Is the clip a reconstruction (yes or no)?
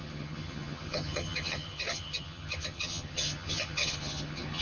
yes